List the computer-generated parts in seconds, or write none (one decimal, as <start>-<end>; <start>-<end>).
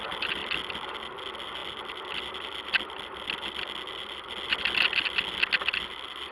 none